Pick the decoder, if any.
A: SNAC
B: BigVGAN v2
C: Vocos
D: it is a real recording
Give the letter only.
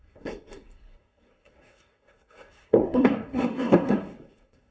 A